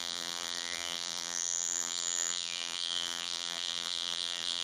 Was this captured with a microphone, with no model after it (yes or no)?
no